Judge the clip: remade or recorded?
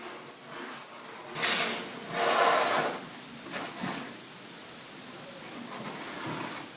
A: recorded